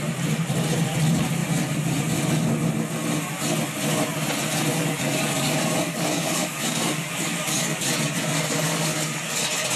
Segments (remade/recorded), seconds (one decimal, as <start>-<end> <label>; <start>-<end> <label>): 0.0-4.7 recorded; 4.7-9.4 remade; 9.4-9.8 recorded